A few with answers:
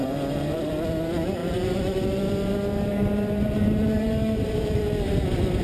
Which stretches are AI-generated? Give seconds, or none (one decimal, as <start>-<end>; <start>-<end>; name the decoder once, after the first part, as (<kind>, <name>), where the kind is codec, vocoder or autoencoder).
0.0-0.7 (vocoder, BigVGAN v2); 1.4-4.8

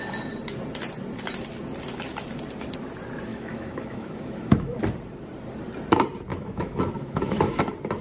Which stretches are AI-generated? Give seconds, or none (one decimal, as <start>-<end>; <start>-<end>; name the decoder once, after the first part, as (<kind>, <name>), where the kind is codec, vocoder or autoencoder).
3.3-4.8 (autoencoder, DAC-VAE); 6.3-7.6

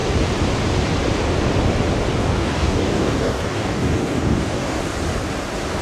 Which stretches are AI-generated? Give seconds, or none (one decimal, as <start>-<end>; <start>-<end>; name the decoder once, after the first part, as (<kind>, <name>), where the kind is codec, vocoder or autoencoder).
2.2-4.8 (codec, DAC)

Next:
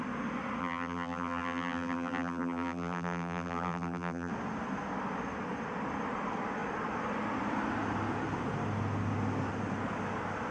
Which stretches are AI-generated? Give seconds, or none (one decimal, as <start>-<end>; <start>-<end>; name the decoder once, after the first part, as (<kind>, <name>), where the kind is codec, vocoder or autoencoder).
0.6-4.3 (vocoder, BigVGAN v2)

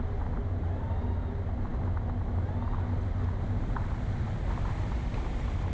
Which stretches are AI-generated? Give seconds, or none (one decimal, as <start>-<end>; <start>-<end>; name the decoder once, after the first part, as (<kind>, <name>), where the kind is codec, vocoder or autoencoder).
none

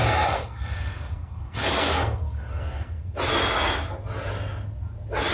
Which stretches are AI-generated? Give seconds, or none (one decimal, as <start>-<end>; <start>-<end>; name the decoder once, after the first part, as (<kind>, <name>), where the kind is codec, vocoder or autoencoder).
0.0-3.2 (codec, SNAC)